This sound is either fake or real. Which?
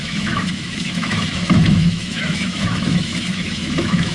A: fake